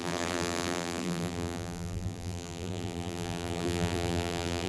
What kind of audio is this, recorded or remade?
remade